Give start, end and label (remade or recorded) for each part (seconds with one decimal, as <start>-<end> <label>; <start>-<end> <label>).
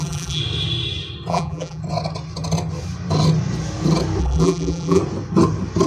0.0-0.4 remade; 0.4-1.3 recorded; 1.3-1.8 remade; 1.8-4.2 recorded; 4.2-5.0 remade; 5.0-5.9 recorded